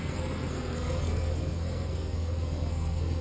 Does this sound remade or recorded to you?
remade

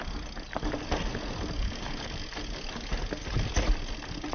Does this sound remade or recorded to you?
recorded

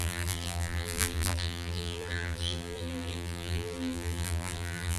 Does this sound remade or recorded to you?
remade